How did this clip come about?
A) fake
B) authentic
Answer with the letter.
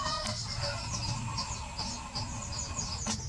B